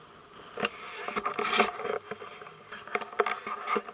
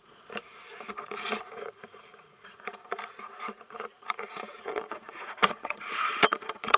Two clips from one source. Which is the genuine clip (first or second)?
first